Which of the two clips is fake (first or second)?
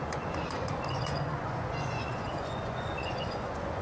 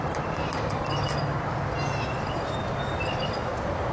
first